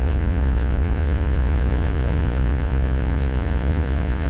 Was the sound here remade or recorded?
remade